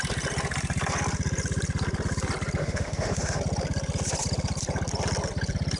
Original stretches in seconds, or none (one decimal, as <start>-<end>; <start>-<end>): 0.0-2.6; 3.4-5.8